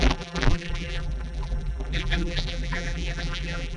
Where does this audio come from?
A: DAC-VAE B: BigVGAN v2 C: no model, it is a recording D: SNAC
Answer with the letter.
B